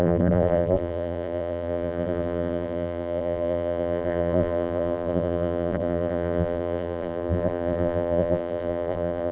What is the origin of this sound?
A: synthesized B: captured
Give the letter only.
A